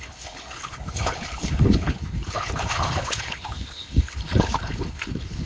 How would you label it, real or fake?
fake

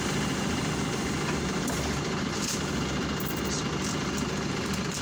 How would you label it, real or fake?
real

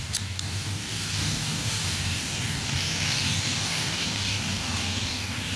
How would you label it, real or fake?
fake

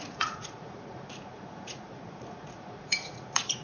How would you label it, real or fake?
fake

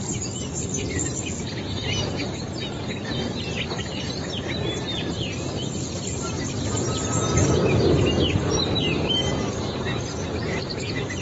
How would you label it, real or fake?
real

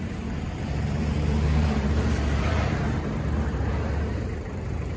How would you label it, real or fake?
fake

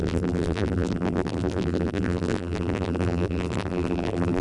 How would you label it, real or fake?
fake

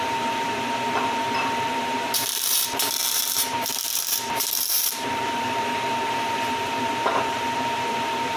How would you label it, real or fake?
fake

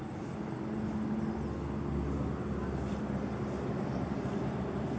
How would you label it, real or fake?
real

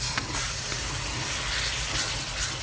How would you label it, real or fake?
real